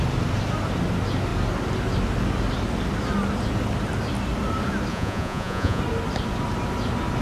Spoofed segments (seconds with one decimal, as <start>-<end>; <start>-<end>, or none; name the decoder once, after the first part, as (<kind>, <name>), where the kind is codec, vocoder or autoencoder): 4.9-5.8 (vocoder, Vocos)